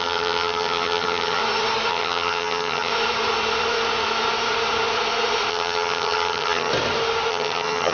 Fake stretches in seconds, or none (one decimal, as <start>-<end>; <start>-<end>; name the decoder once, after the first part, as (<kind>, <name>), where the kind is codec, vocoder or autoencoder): 0.0-1.4 (vocoder, HiFi-GAN); 1.9-2.9; 5.5-6.7; 7.3-7.9